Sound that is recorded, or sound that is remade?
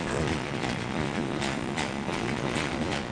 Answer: remade